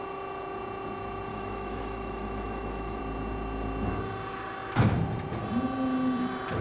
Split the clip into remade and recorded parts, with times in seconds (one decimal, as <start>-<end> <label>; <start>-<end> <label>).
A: 0.0-1.3 recorded; 1.3-3.0 remade; 3.0-6.6 recorded